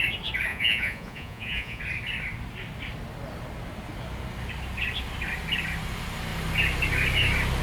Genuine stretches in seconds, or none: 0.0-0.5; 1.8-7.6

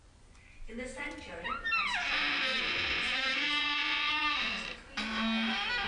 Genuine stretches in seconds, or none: 1.1-2.5; 4.4-5.9